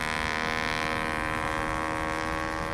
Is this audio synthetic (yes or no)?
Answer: no